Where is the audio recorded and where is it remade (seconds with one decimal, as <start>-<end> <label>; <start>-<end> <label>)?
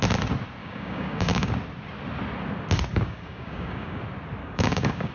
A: 0.0-0.6 recorded; 0.6-1.5 remade; 1.5-2.9 recorded; 2.9-4.0 remade; 4.0-4.4 recorded; 4.4-5.1 remade